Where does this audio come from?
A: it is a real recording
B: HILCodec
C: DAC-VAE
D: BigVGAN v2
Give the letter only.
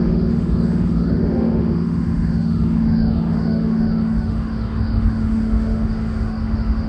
C